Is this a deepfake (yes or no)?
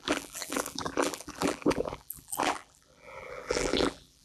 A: yes